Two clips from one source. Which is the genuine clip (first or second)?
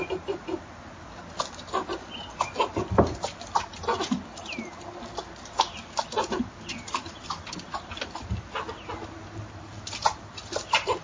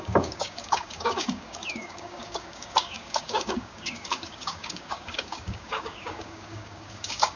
first